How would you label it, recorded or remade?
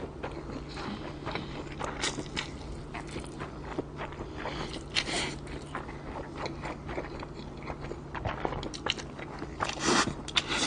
recorded